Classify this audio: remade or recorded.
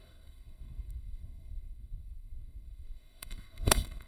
remade